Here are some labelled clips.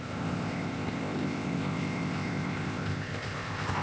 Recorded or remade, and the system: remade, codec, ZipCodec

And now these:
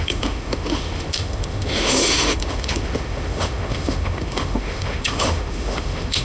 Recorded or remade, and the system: remade, autoencoder, DAC-VAE